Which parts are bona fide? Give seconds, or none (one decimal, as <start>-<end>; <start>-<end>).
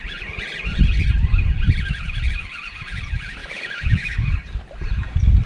0.0-3.4; 4.3-5.5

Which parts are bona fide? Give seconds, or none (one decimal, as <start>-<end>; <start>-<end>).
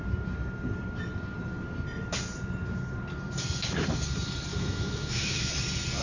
0.0-4.5; 5.5-6.0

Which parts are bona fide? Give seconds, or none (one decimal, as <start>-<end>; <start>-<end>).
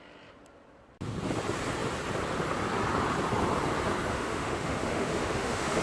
0.0-4.1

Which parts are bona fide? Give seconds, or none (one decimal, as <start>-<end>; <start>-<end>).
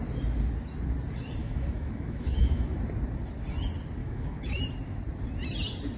0.0-1.4; 2.8-4.0; 4.6-6.0